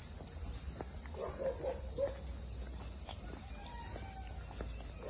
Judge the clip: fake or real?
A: real